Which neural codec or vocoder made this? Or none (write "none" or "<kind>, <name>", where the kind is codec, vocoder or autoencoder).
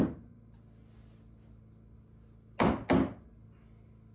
none